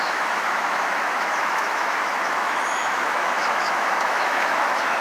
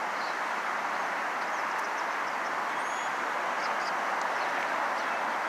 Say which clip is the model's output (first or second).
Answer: first